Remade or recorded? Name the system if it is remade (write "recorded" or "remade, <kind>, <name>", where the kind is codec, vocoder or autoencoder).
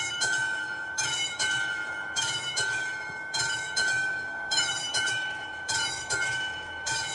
remade, autoencoder, DAC-VAE